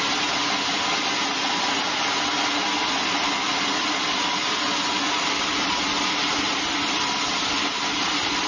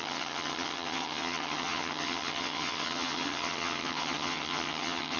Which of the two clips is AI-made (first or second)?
second